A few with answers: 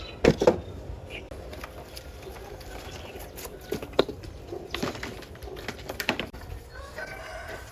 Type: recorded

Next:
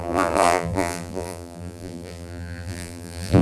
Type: remade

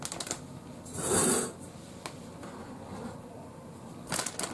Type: recorded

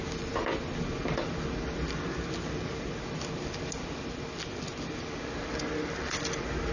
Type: recorded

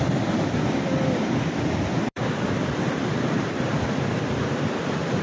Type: remade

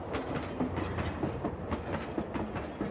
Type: recorded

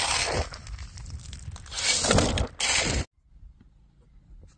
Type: recorded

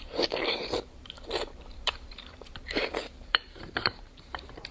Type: remade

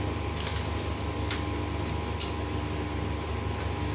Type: recorded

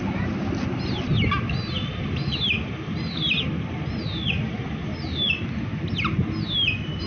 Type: recorded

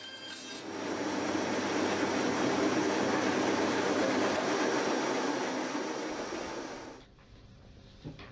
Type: recorded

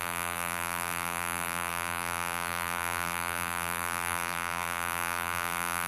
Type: remade